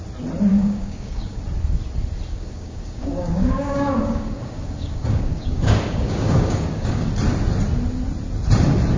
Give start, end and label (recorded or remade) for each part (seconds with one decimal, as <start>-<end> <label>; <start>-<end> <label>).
0.0-0.5 recorded; 0.5-1.4 remade; 1.4-2.3 recorded; 2.3-7.1 remade; 7.1-9.0 recorded